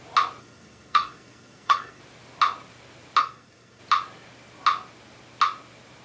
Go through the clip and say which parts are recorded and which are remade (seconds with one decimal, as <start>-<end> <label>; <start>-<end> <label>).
0.0-0.4 recorded; 0.4-2.0 remade; 2.0-3.2 recorded; 3.2-3.8 remade; 3.8-6.0 recorded